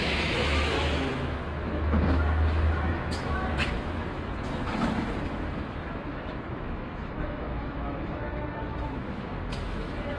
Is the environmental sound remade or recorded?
remade